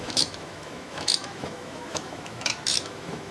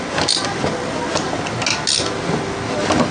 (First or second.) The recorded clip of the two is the second